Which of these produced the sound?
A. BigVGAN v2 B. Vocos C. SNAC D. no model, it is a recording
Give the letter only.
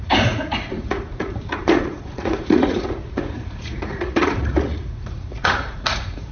B